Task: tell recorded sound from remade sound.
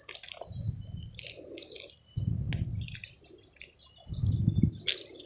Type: recorded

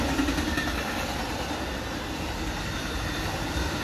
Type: recorded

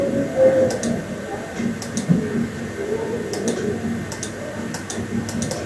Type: recorded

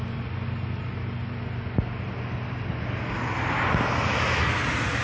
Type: recorded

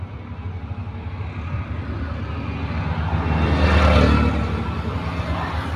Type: recorded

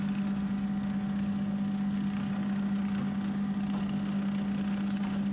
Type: recorded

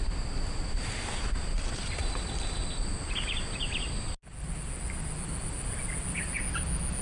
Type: recorded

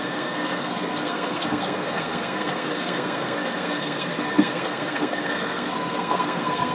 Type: remade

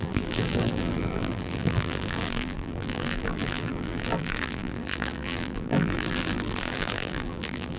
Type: remade